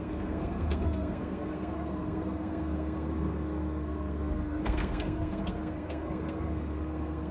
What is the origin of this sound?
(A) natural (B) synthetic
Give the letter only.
B